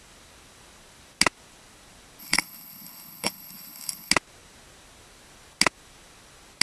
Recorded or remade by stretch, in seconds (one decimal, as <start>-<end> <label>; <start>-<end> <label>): 0.0-2.2 recorded; 2.2-4.1 remade; 4.1-6.6 recorded